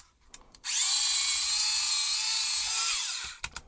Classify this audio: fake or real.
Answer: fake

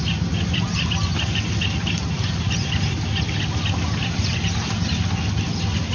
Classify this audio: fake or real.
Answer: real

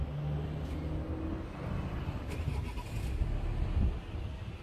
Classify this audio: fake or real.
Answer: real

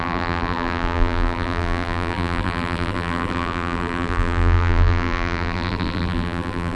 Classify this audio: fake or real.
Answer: fake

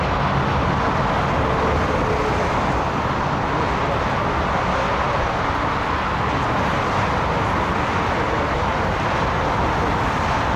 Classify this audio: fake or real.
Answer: real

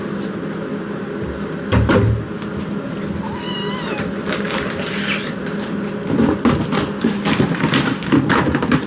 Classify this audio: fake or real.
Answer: real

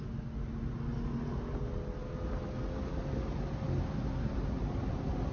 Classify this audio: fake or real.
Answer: real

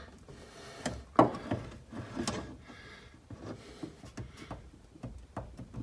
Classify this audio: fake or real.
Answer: real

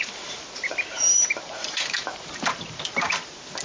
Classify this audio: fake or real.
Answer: fake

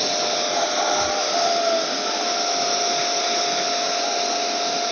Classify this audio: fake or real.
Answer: real